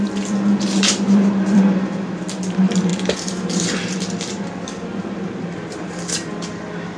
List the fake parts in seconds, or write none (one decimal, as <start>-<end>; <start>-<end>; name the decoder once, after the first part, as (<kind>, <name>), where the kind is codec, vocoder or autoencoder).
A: 0.0-7.0 (vocoder, BigVGAN v2)